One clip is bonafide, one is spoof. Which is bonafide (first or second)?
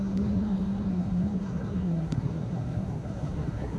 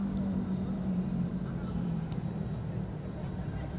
second